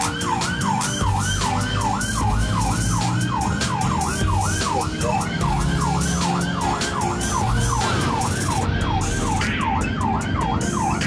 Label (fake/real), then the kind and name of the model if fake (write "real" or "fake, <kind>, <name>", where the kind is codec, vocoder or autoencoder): real